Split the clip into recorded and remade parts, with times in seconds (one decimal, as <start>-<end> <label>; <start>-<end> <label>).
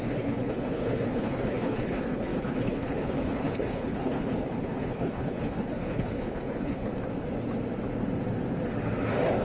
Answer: 0.0-6.9 remade; 6.9-9.4 recorded